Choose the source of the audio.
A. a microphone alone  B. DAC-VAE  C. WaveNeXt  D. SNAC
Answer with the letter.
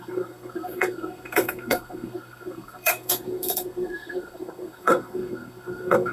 D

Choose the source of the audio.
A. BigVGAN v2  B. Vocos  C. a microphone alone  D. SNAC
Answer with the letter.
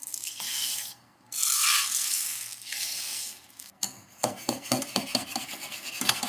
D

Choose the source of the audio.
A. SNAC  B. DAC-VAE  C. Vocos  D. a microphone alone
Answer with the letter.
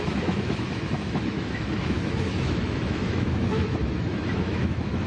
B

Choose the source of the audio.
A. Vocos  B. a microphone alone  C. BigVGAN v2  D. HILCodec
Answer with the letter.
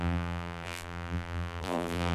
C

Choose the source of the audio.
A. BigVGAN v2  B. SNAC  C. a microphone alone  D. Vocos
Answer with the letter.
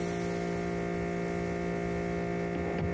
C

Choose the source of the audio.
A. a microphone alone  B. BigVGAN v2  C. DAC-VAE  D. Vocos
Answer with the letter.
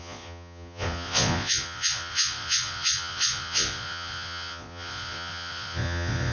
D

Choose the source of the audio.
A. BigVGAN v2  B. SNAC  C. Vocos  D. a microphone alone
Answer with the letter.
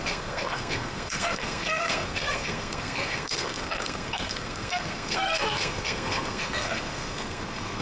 B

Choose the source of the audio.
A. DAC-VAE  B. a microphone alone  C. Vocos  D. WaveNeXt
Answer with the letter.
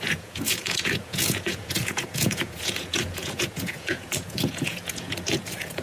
C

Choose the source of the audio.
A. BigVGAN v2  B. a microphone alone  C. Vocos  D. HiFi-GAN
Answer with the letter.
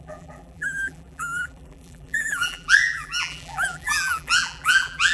A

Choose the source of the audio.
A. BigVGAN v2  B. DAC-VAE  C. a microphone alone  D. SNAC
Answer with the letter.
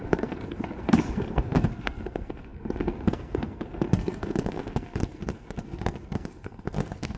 D